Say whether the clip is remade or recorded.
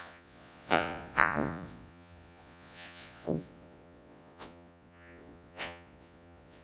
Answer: remade